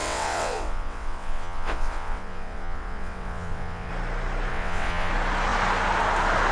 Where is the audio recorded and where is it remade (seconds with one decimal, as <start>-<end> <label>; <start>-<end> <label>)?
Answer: 0.0-3.9 remade; 3.9-4.5 recorded; 4.5-5.1 remade; 5.1-6.5 recorded